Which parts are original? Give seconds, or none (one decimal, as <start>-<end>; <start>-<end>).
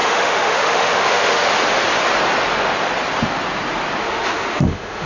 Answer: 1.5-4.0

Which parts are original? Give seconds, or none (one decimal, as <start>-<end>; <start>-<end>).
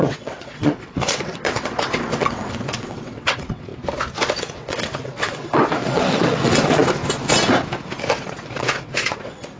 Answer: 3.7-4.4; 6.8-8.1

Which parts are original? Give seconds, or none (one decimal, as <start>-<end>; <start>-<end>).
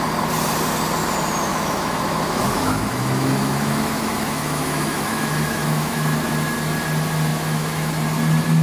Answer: 0.0-1.5; 6.3-7.3; 7.9-8.6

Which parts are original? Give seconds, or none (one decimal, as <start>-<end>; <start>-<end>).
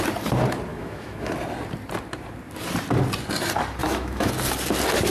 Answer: 0.0-0.7; 1.3-3.8; 4.3-5.1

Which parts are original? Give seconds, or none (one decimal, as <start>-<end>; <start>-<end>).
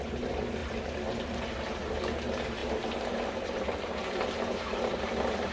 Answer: none